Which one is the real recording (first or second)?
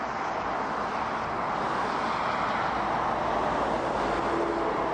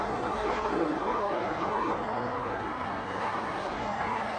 first